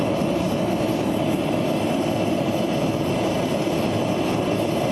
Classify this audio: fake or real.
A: real